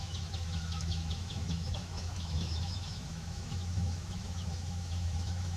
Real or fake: fake